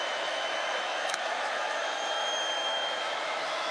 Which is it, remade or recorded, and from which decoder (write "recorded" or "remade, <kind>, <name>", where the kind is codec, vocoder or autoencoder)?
remade, autoencoder, DAC-VAE